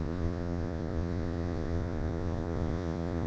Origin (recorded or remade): remade